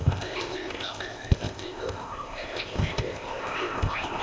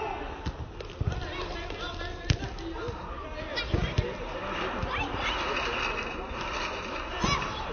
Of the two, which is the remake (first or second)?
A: first